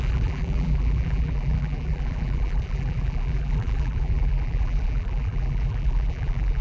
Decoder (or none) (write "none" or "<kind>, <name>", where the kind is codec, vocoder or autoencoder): vocoder, BigVGAN v2